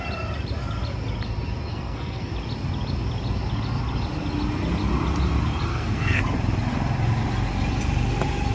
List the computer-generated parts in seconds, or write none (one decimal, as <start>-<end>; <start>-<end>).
1.7-2.3; 5.7-6.2